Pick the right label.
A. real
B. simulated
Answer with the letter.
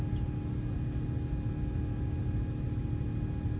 A